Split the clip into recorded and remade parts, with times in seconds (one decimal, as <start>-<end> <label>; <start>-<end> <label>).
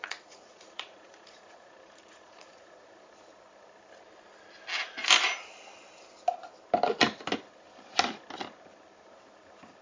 0.0-3.1 remade; 3.1-9.8 recorded